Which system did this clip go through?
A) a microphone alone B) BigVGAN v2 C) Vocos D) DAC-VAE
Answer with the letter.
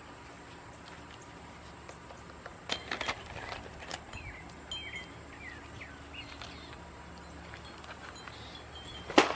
A